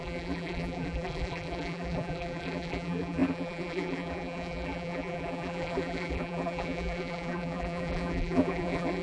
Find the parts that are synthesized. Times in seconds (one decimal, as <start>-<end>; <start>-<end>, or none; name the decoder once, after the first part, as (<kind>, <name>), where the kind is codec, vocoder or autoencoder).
0.0-9.0 (vocoder, BigVGAN v2)